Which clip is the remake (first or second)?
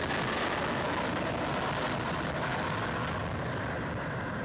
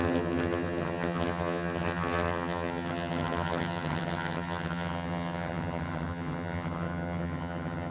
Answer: second